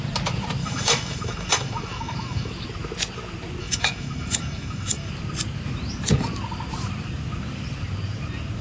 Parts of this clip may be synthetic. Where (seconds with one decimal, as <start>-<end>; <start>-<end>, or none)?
0.6-2.5; 3.6-5.1